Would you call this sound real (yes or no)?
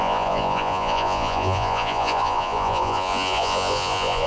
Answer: no